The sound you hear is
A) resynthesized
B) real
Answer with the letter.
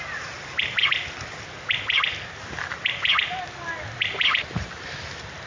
B